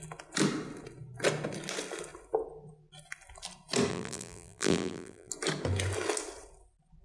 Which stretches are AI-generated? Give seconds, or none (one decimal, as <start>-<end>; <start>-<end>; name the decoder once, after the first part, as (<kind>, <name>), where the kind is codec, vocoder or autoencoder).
3.9-5.3 (vocoder, BigVGAN v2)